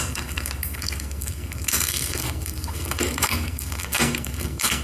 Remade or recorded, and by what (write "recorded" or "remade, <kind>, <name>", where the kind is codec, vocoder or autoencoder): remade, codec, SNAC